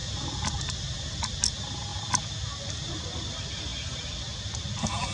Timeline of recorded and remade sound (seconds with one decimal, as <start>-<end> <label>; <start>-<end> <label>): 0.0-5.1 recorded